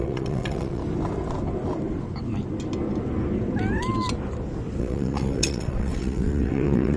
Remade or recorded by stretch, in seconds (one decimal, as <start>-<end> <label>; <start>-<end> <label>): 0.0-0.8 remade; 0.8-4.8 recorded; 4.8-7.0 remade